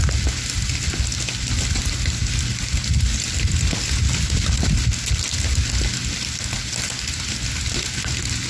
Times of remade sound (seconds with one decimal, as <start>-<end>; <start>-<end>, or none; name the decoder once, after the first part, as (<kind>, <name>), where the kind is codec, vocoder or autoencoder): none